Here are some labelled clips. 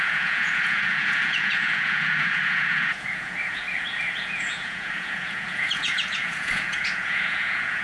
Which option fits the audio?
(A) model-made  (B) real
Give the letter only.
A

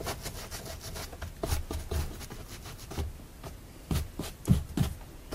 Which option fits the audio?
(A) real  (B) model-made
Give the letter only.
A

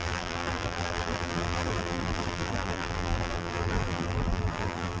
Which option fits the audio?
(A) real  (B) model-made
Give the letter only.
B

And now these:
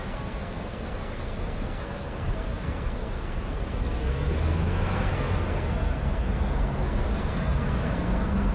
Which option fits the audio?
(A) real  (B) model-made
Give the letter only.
B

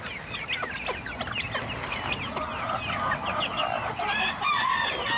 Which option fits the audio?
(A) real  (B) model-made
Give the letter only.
A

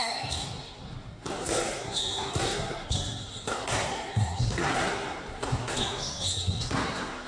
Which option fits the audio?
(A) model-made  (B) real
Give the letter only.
A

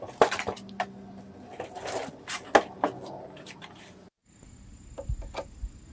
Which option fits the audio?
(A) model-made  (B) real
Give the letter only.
B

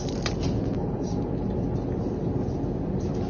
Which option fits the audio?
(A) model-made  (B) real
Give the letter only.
B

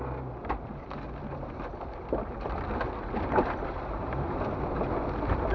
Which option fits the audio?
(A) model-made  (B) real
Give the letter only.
B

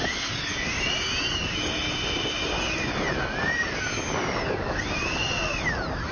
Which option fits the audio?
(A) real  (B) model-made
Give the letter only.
A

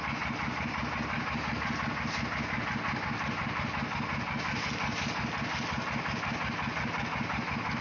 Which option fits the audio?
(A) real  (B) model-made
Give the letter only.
A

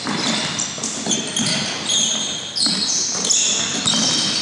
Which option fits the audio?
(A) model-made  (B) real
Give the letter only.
B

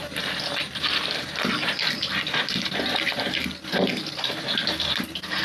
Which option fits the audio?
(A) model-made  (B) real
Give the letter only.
B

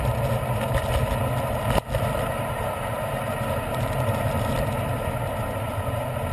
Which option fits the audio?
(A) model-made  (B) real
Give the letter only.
B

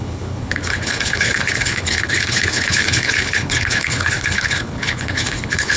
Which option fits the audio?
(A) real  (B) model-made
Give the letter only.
B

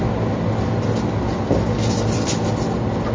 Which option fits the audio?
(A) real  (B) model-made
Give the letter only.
A